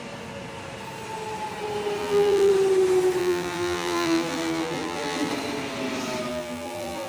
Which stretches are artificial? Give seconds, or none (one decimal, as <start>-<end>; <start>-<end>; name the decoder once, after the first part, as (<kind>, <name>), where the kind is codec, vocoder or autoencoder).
2.0-2.5 (vocoder, BigVGAN v2); 3.2-5.3; 6.3-7.1